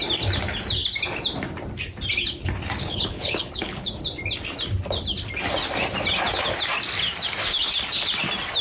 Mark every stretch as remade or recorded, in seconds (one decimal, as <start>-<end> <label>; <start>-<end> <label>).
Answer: 0.0-2.8 recorded; 2.8-3.9 remade; 3.9-8.6 recorded